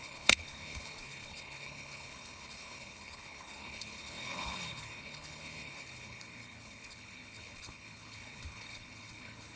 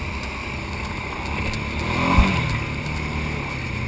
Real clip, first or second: second